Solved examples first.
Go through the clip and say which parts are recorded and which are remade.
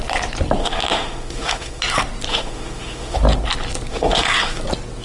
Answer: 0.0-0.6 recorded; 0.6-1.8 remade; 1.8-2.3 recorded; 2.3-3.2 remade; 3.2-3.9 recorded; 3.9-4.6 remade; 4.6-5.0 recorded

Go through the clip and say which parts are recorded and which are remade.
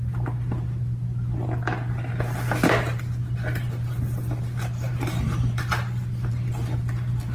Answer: 0.0-7.3 recorded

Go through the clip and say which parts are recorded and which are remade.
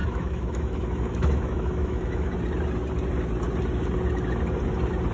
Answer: 0.0-2.3 remade; 2.3-5.1 recorded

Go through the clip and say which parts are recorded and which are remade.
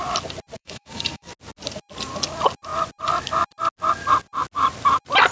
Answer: 0.0-0.6 recorded; 0.6-1.3 remade; 1.3-5.3 recorded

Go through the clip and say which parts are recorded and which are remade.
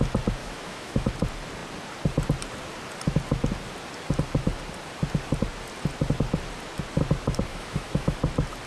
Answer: 0.0-0.4 recorded; 0.4-1.1 remade; 1.1-7.5 recorded; 7.5-8.2 remade; 8.2-8.7 recorded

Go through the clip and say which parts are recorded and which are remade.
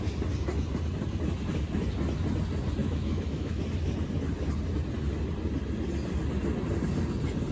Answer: 0.0-2.8 recorded; 2.8-3.6 remade; 3.6-7.5 recorded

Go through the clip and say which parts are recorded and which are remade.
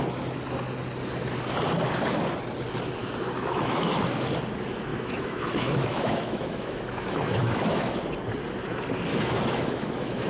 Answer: 0.0-3.0 recorded; 3.0-4.0 remade; 4.0-4.9 recorded; 4.9-8.0 remade; 8.0-9.1 recorded; 9.1-10.3 remade